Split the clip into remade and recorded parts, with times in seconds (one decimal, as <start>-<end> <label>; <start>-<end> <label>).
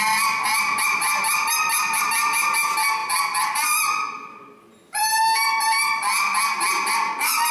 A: 0.0-7.5 recorded